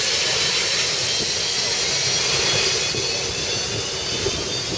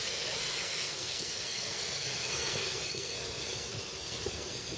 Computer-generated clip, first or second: second